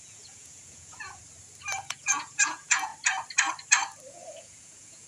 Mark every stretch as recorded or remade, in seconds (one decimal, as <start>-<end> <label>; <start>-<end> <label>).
0.0-1.2 remade; 1.2-1.8 recorded; 1.8-2.9 remade; 2.9-4.1 recorded; 4.1-5.1 remade